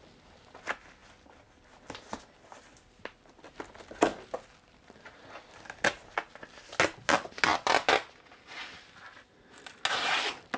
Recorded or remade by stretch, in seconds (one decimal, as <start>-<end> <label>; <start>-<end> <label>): 0.0-10.6 recorded